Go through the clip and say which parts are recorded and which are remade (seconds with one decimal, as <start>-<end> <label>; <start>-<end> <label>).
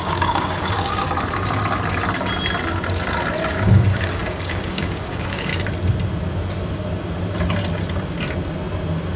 0.0-1.0 remade; 1.0-3.4 recorded; 3.4-5.5 remade; 5.5-9.2 recorded